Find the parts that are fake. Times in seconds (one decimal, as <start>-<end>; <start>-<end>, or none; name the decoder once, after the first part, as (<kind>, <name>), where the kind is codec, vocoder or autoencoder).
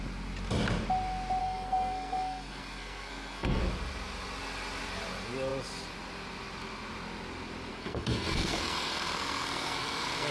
1.4-3.6 (codec, SNAC); 7.7-10.3